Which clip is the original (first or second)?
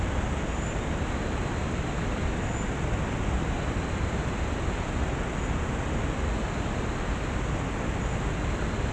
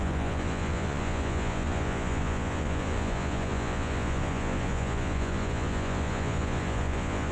first